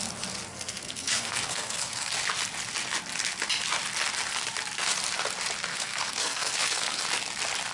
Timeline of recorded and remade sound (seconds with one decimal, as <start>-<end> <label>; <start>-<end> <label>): 0.0-0.5 recorded; 0.5-2.1 remade; 2.1-5.7 recorded; 5.7-7.0 remade; 7.0-7.7 recorded